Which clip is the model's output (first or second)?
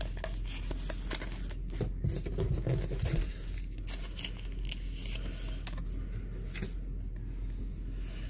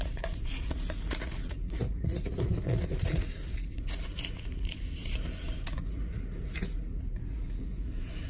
second